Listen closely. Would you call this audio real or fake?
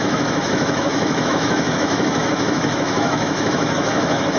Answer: fake